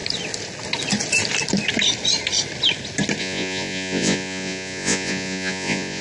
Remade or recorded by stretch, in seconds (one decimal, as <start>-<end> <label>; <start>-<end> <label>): 0.0-3.2 recorded; 3.2-6.0 remade